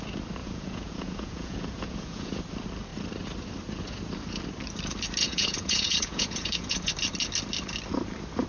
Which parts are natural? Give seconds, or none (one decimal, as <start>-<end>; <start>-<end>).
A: 0.0-0.4; 2.4-5.2; 6.9-8.5